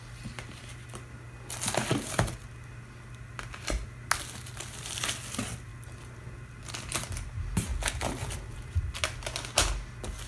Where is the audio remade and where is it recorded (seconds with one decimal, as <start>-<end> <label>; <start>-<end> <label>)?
0.0-10.3 recorded